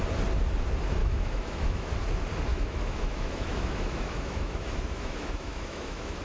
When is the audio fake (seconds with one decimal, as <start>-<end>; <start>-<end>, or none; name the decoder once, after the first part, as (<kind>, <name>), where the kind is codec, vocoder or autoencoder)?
1.0-1.9 (autoencoder, DAC-VAE); 2.5-6.2